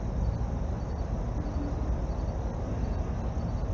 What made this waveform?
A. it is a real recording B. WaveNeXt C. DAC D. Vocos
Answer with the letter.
A